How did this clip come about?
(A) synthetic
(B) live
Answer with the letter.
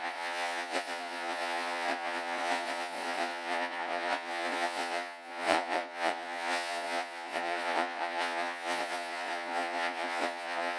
A